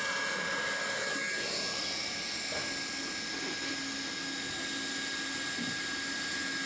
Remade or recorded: recorded